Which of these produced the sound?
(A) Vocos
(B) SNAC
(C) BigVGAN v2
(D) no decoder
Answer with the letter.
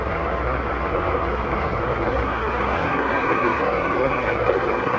B